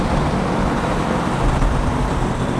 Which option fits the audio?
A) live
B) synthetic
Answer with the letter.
B